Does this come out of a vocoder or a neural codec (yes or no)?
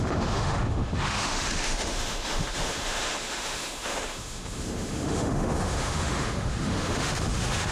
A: yes